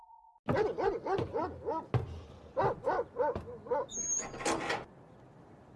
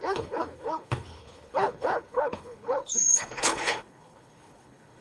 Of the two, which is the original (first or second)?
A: first